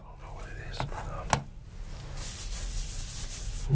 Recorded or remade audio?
recorded